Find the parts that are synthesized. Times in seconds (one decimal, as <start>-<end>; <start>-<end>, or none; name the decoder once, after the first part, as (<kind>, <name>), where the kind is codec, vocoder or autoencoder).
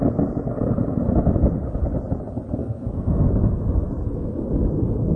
2.6-3.3 (codec, SNAC)